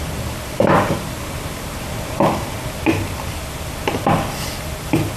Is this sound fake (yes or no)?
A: no